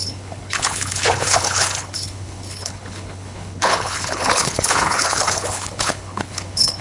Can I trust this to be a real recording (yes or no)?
no